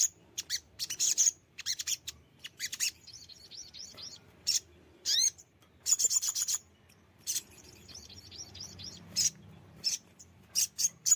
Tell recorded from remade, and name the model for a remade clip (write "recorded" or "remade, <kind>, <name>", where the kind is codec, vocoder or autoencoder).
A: remade, vocoder, BigVGAN v2